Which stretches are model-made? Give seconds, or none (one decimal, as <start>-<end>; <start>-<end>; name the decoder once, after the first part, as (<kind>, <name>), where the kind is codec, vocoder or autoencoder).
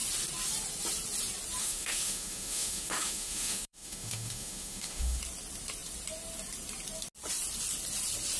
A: 1.6-5.2 (autoencoder, DAC-VAE)